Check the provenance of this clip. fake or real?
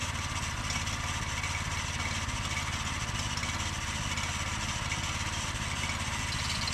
real